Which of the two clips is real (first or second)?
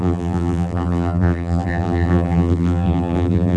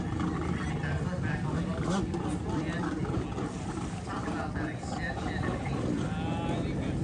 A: second